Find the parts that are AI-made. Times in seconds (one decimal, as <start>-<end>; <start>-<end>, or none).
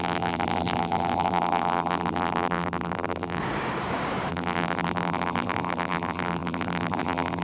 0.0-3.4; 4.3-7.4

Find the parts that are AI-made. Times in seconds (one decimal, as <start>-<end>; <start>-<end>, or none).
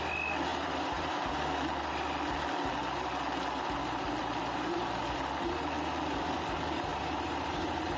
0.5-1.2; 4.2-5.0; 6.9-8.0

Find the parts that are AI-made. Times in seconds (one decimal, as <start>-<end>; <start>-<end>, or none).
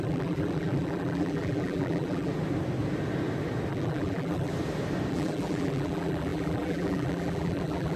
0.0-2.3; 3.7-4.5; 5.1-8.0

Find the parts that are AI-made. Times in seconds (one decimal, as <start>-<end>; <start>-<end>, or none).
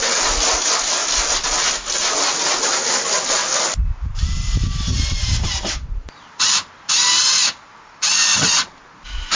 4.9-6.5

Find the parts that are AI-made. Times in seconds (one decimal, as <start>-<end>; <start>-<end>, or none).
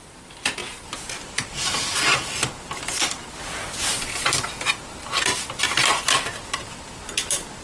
none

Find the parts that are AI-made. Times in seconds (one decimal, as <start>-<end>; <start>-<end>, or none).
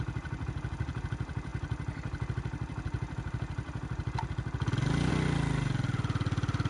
none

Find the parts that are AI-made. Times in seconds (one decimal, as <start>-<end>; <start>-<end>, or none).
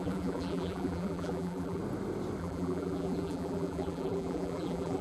0.0-1.8; 2.4-5.0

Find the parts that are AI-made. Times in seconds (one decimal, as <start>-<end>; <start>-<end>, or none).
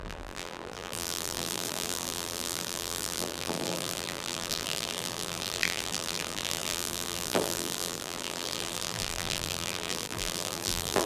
0.0-11.1